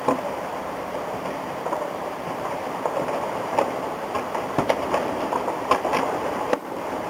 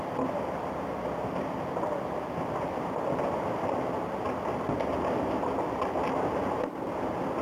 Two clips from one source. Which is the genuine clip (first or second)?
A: second